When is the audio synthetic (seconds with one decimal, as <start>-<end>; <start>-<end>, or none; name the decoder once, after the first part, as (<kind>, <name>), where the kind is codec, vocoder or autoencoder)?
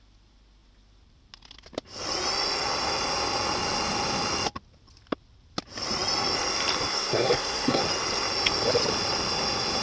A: 6.9-7.8 (codec, SNAC)